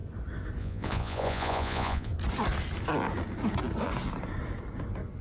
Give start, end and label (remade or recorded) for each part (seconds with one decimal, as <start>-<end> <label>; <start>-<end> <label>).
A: 0.0-0.6 recorded; 0.6-2.1 remade; 2.1-5.2 recorded